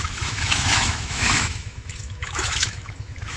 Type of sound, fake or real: fake